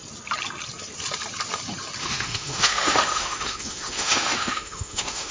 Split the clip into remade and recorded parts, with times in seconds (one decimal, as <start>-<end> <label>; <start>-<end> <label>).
0.0-2.0 recorded; 2.0-5.3 remade